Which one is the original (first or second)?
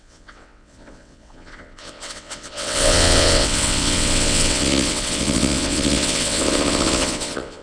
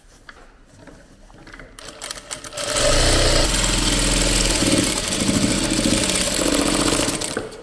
second